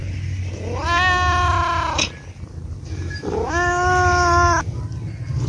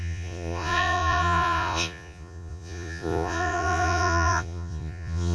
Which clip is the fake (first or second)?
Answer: second